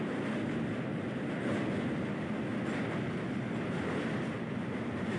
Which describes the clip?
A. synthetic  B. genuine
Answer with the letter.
B